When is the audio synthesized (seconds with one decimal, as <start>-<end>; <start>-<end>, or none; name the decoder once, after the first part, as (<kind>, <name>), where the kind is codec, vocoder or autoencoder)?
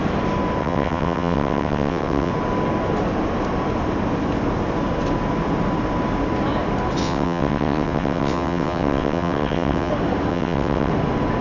0.6-2.3 (vocoder, WaveNeXt); 7.0-9.9; 10.3-10.9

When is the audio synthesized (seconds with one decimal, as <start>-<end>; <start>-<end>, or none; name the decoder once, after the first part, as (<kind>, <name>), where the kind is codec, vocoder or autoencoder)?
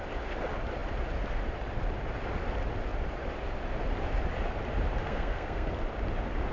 5.0-5.7 (codec, SNAC)